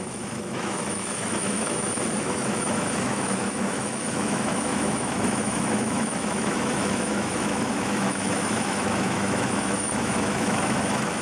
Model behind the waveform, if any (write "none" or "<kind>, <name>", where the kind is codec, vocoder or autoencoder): autoencoder, DAC-VAE